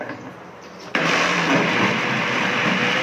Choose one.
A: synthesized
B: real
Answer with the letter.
B